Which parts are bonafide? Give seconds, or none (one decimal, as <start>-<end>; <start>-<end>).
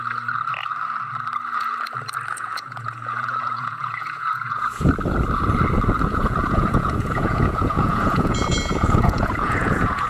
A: 0.0-2.3; 4.9-6.1